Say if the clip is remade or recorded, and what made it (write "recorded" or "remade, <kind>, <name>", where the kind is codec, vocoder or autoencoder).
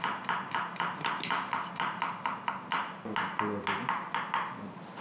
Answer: recorded